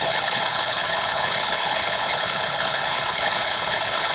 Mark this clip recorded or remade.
remade